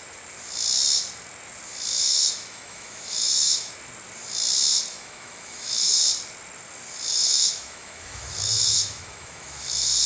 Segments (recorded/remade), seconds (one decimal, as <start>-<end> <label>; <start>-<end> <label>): 0.0-1.9 recorded; 1.9-3.7 remade; 3.7-4.9 recorded; 4.9-6.0 remade; 6.0-7.1 recorded; 7.1-10.1 remade